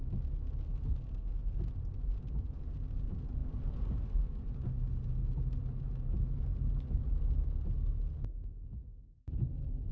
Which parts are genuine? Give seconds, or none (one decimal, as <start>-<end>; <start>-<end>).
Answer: 0.0-8.3; 9.0-9.9